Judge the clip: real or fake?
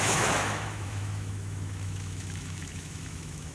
fake